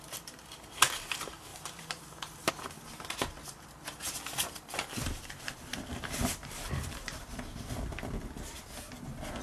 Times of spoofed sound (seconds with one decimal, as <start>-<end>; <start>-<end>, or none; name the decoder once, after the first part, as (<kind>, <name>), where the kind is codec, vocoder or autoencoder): 1.5-2.5 (vocoder, BigVGAN v2); 5.1-7.8